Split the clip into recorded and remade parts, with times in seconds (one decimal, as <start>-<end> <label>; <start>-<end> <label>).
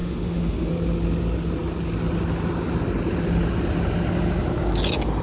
0.0-0.7 remade; 0.7-5.2 recorded